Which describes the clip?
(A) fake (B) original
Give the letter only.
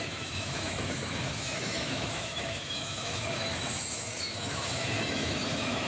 A